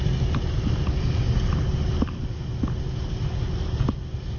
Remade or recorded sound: recorded